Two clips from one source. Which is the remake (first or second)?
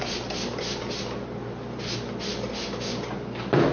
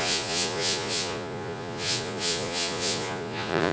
second